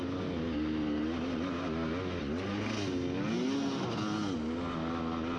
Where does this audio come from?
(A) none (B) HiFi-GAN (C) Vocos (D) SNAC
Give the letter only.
A